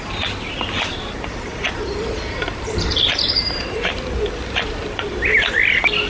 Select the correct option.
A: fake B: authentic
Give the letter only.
A